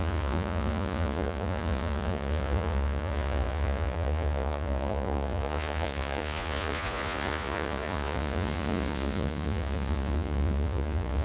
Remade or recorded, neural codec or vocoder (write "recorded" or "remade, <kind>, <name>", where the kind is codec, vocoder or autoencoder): remade, vocoder, Vocos